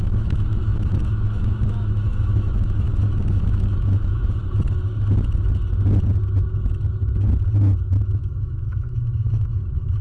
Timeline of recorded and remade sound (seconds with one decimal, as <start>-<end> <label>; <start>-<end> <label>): 0.0-4.4 remade; 4.4-7.9 recorded; 7.9-10.0 remade